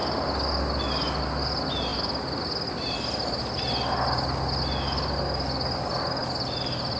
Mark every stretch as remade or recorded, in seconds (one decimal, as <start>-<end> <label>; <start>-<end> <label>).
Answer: 0.0-7.0 recorded